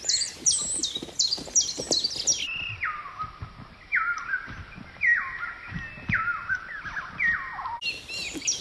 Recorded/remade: recorded